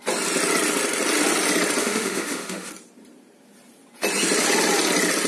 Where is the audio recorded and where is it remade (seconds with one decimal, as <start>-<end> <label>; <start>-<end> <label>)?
0.0-1.8 recorded; 1.8-2.7 remade; 2.7-5.3 recorded